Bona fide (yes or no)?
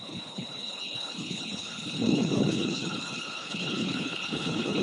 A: no